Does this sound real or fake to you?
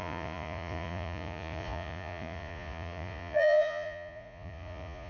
fake